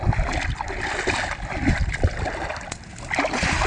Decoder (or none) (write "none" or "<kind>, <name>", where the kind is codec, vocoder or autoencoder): none